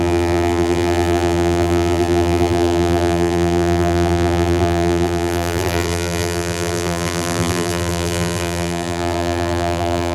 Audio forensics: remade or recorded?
remade